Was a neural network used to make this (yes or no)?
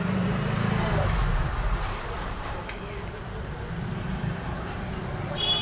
yes